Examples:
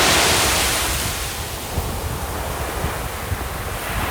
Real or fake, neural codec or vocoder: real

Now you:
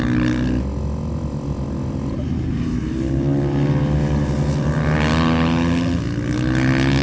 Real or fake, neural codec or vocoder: real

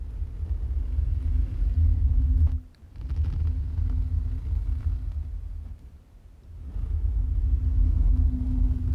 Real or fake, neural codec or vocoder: real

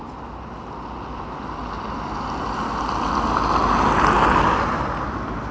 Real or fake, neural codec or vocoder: real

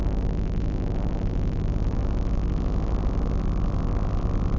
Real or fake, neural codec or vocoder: real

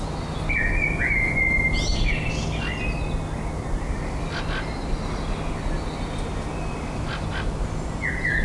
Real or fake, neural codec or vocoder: real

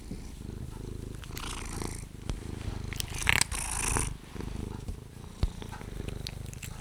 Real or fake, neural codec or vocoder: real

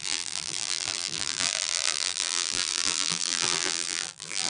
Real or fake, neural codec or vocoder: fake, vocoder, BigVGAN v2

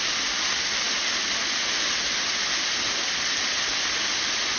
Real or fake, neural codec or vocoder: real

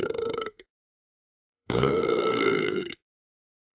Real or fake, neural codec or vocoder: fake, codec, SNAC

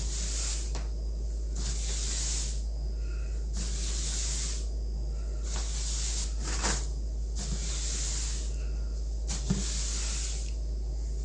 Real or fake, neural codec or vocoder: real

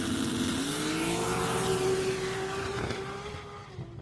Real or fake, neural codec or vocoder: real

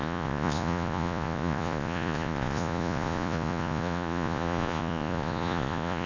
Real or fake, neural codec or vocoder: fake, vocoder, Vocos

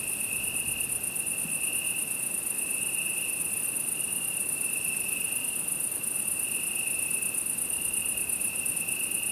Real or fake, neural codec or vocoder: real